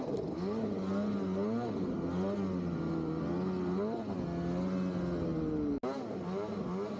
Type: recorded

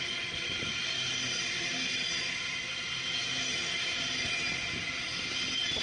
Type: recorded